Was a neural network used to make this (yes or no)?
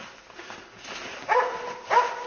no